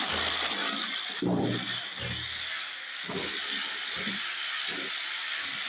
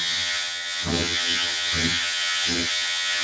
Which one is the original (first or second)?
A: first